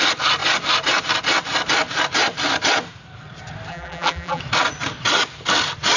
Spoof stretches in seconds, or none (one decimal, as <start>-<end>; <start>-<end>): 3.7-4.4

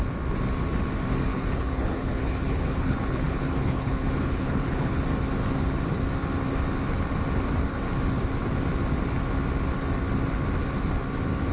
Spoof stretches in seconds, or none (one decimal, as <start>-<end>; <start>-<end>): 1.3-5.0

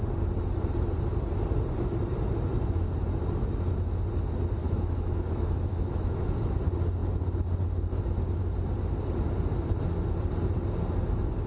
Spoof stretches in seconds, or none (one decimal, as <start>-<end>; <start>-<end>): 4.6-6.2

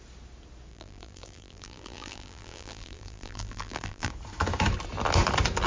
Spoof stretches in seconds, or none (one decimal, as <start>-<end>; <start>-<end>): 0.7-4.1